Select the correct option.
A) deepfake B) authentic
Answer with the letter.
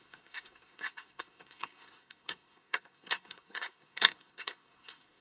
A